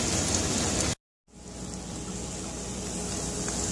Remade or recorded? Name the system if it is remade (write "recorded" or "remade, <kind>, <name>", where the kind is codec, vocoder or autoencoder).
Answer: recorded